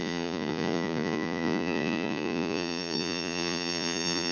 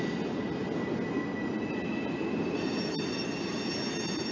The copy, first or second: first